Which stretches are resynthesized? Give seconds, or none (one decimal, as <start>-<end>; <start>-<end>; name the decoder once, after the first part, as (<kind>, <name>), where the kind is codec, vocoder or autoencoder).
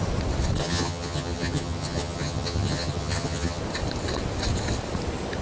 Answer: 0.6-3.6 (vocoder, HiFi-GAN)